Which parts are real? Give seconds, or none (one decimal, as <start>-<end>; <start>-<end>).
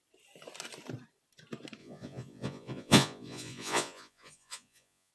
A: 0.0-1.8